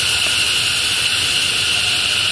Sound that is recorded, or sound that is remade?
recorded